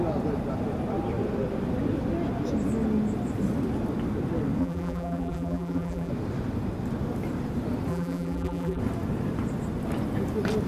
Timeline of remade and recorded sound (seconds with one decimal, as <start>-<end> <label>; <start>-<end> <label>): 0.0-4.6 recorded; 4.6-6.1 remade; 6.1-7.9 recorded; 7.9-8.8 remade; 8.8-10.7 recorded